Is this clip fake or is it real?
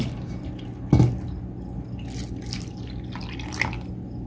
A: real